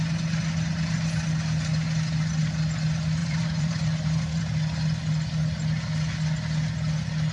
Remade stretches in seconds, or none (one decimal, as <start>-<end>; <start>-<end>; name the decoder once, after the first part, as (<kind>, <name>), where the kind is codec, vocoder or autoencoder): 3.2-4.4 (vocoder, BigVGAN v2)